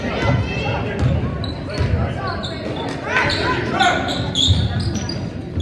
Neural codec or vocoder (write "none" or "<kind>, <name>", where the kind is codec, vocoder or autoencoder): none